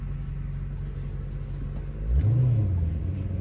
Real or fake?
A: real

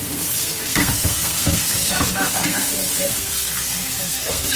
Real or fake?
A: fake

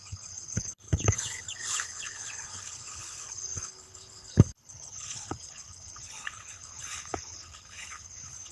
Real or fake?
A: fake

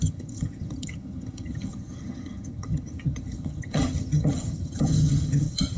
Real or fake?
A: fake